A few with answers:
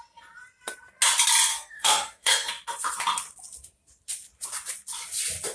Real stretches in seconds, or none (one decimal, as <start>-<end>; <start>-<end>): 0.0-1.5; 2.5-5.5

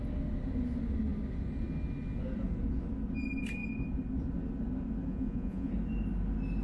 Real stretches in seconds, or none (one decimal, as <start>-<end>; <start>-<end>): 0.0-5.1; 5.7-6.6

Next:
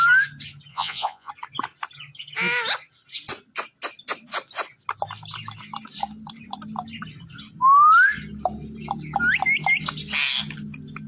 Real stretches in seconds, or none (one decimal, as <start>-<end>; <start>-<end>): 0.0-0.7; 1.3-11.1

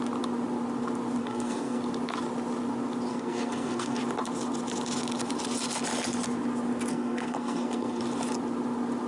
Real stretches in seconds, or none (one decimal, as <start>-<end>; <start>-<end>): 0.0-1.2; 1.8-3.1; 4.0-6.9; 8.0-9.1

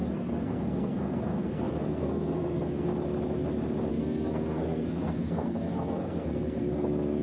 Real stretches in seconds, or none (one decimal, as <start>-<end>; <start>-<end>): 2.9-3.9

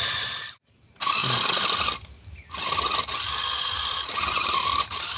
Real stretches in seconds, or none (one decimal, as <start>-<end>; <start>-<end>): 1.2-4.3

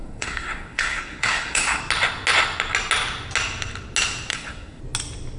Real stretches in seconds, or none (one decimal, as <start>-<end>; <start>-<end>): 1.8-4.3; 4.8-5.4